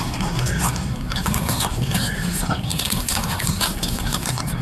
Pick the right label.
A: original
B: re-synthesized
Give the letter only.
B